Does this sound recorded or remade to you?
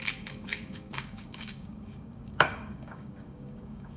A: remade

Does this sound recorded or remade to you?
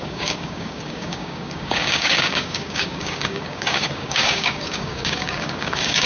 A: remade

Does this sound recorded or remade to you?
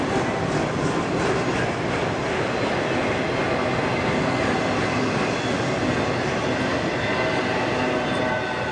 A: recorded